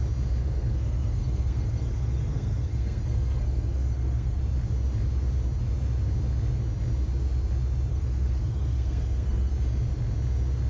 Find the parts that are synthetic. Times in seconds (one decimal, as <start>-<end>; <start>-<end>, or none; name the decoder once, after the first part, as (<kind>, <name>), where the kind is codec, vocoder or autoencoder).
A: 0.4-4.4 (codec, SNAC); 7.9-9.5